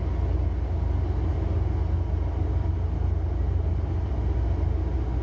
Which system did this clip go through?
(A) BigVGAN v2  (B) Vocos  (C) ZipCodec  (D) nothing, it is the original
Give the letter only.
D